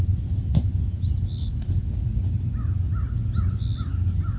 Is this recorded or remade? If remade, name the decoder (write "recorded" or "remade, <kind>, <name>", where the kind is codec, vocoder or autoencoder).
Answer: recorded